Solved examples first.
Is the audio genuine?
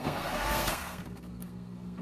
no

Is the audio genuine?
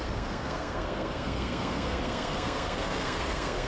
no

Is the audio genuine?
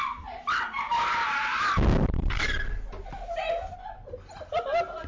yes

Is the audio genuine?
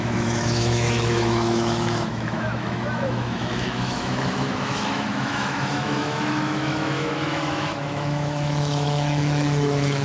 no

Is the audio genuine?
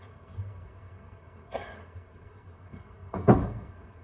no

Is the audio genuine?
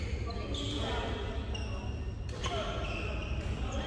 yes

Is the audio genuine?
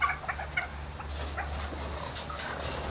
yes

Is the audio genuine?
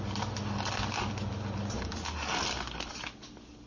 yes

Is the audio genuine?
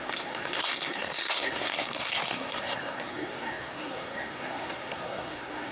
no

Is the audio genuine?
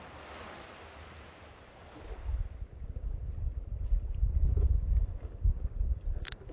yes